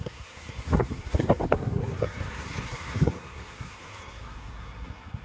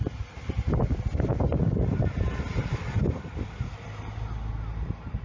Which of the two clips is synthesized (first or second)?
first